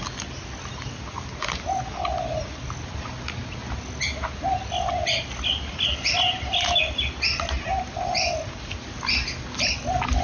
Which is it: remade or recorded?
recorded